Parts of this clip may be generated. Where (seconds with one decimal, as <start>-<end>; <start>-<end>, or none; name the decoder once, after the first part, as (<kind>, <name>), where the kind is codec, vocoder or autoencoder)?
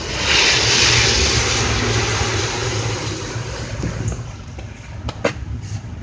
none